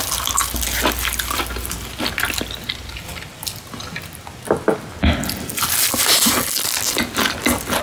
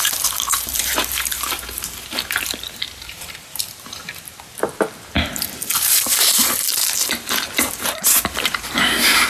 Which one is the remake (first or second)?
second